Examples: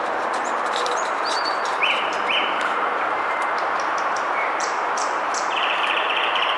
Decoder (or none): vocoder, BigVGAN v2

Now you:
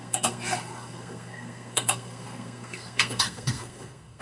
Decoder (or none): codec, SNAC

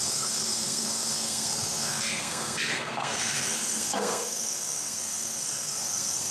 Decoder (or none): codec, SNAC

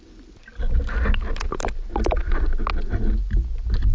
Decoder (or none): none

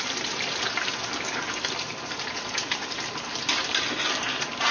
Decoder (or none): vocoder, BigVGAN v2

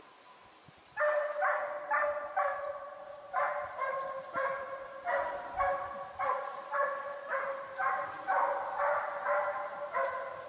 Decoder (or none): none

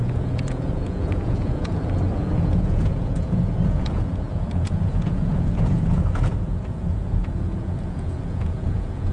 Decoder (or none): vocoder, Vocos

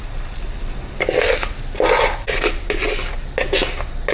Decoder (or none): none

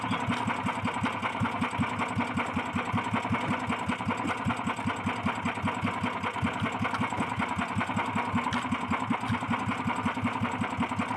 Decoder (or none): none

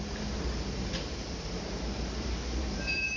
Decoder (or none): vocoder, BigVGAN v2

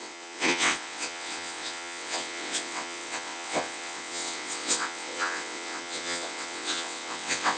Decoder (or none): vocoder, WaveNeXt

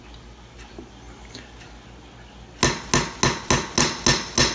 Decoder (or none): none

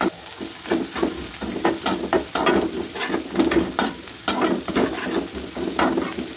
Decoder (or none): none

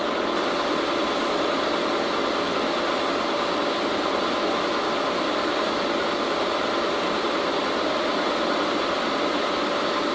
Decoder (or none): none